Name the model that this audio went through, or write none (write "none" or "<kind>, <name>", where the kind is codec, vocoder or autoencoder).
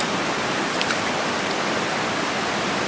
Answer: none